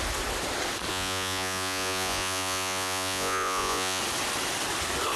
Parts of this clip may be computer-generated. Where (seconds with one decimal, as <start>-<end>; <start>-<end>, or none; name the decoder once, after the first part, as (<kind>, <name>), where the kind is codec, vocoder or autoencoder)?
0.9-4.0 (vocoder, Vocos)